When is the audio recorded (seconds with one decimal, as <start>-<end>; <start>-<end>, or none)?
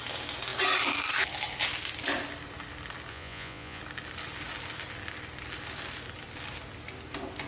0.0-3.1; 3.8-7.5